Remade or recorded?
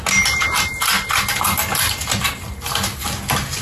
recorded